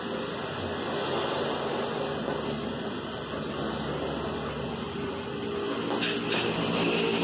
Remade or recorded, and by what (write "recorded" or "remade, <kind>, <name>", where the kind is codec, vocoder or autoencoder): recorded